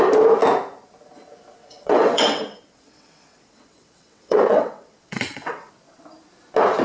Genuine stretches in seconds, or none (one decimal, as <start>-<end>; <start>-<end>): 0.0-1.6; 5.7-6.8